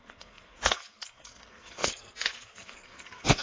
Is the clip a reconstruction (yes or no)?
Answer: yes